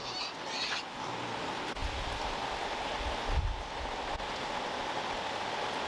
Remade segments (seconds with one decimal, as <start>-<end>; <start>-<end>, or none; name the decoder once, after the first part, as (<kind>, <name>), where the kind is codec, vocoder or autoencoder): none